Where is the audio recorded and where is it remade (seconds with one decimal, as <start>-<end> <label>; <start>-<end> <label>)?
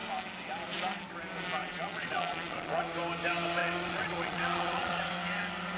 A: 0.0-1.6 recorded; 1.6-2.8 remade; 2.8-3.6 recorded; 3.6-5.1 remade; 5.1-5.8 recorded